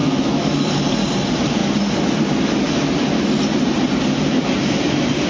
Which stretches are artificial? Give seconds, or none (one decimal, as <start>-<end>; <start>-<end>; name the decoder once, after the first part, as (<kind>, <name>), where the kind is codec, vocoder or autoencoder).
0.0-0.7 (autoencoder, DAC-VAE)